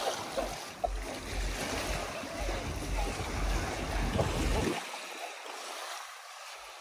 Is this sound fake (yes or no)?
no